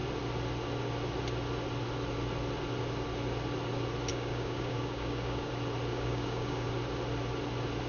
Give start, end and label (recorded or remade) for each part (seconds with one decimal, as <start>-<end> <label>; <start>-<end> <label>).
0.0-4.1 recorded; 4.1-5.5 remade; 5.5-5.9 recorded; 5.9-6.7 remade; 6.7-7.9 recorded